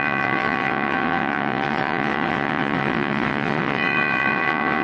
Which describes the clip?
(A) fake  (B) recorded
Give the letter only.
A